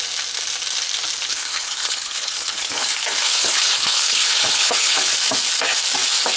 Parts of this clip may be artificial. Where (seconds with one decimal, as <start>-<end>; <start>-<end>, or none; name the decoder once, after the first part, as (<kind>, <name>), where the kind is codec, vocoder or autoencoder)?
1.3-5.1 (codec, HILCodec)

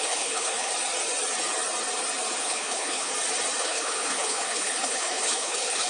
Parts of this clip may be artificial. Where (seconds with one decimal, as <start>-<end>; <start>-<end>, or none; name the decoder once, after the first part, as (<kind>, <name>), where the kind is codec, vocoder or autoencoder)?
0.0-0.7 (codec, HILCodec); 2.4-3.1; 3.6-5.9

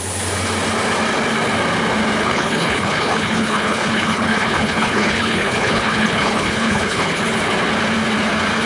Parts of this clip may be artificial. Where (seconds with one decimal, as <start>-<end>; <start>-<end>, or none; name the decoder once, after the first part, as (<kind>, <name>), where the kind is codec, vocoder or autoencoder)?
2.2-7.2 (codec, HILCodec)